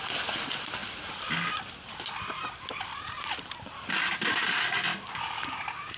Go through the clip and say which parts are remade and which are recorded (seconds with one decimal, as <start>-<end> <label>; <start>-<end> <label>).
0.0-4.9 recorded; 4.9-6.0 remade